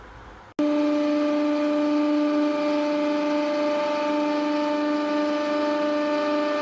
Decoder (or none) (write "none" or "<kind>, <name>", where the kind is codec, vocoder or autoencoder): none